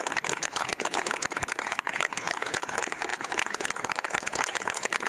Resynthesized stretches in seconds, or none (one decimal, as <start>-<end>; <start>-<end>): 0.0-5.1